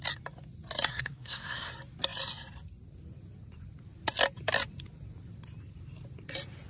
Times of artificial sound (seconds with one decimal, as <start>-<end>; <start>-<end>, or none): 0.9-1.7